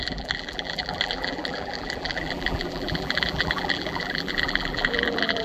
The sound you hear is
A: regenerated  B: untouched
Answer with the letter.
A